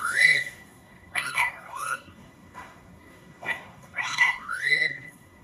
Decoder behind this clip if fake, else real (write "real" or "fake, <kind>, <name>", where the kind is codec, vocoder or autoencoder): fake, codec, SNAC